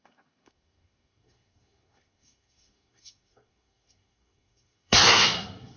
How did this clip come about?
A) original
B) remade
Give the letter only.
B